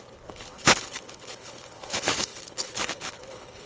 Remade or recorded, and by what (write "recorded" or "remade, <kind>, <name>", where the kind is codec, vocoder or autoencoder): remade, codec, HILCodec